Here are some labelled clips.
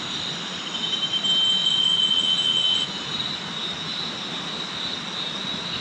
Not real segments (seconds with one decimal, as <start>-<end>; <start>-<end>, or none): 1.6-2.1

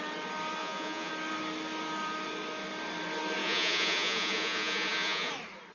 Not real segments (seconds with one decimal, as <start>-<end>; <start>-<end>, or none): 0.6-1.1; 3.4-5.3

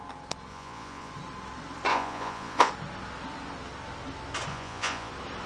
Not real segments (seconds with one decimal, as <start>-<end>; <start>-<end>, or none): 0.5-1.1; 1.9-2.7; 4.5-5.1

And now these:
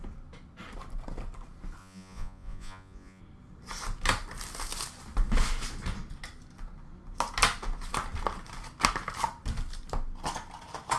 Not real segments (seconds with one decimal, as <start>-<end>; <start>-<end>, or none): 1.8-3.2

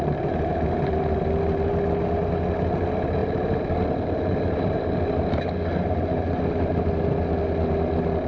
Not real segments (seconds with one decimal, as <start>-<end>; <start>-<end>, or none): none

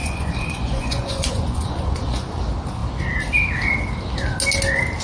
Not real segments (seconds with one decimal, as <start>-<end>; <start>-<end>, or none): 0.0-2.4

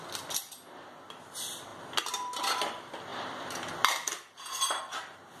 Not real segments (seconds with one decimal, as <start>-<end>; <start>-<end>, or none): none